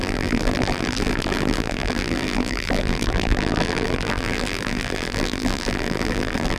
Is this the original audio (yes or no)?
no